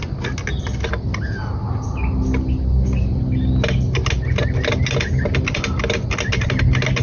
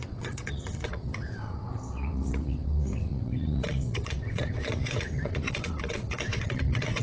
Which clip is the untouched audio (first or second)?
first